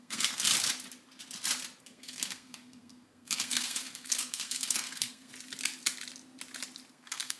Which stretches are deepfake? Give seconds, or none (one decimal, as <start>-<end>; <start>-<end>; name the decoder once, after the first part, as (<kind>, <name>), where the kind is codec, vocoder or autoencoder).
0.0-0.5 (codec, SNAC); 1.8-5.3; 6.9-7.4